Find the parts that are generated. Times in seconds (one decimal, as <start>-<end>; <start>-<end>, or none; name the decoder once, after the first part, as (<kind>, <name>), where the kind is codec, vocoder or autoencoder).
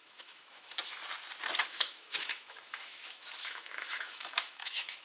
0.0-0.8 (autoencoder, DAC-VAE); 1.6-5.0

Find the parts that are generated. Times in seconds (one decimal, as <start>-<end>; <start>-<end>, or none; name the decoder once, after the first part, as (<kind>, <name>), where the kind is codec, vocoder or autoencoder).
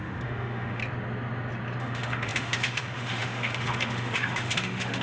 0.0-0.8 (autoencoder, DAC-VAE); 1.8-5.0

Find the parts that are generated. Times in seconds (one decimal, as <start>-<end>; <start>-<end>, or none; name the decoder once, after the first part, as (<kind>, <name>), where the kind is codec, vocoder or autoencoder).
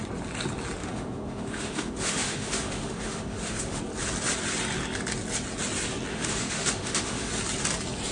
0.8-3.8 (autoencoder, DAC-VAE); 6.1-7.3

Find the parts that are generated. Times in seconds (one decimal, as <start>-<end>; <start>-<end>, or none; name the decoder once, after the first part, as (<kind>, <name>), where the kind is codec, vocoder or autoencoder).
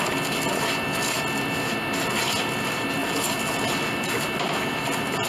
none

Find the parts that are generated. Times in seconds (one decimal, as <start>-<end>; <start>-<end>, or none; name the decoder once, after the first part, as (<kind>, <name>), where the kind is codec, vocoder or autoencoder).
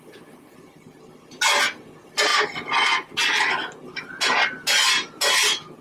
none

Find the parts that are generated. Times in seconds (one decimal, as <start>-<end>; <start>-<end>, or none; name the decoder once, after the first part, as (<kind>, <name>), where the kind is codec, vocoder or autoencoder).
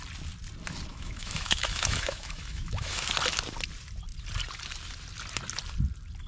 0.9-3.1 (autoencoder, DAC-VAE)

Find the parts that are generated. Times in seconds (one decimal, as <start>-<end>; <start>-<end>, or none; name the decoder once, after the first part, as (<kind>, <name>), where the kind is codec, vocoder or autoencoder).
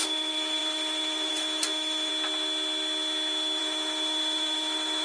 0.0-2.1 (autoencoder, DAC-VAE); 3.6-5.0